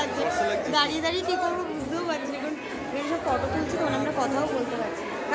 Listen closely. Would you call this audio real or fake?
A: real